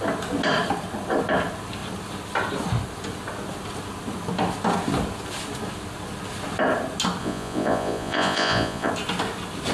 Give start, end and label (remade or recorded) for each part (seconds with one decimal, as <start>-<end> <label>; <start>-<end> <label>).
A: 0.0-7.2 recorded; 7.2-8.9 remade; 8.9-9.7 recorded